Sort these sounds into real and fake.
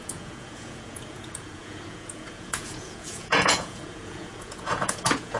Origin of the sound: fake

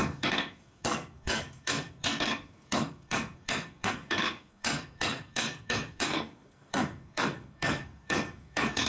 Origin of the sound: fake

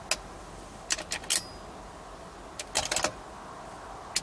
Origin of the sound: real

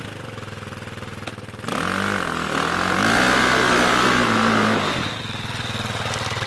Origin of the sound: real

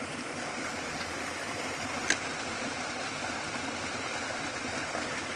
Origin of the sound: real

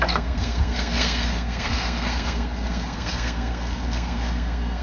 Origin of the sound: fake